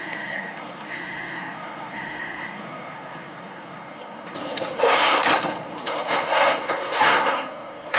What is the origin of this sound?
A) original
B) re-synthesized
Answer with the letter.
B